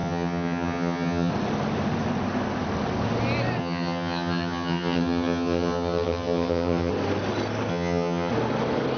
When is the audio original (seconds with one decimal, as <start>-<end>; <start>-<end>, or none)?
1.3-3.6; 6.9-7.7; 8.3-9.0